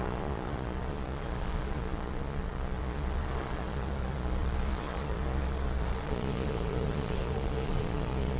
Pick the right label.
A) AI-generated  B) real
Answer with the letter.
A